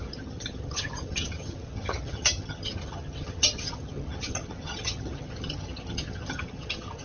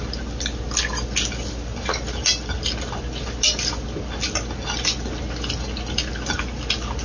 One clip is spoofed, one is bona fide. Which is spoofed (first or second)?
first